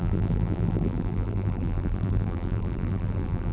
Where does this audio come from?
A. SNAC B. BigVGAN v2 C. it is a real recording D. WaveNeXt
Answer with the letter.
B